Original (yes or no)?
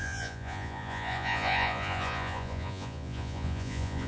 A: no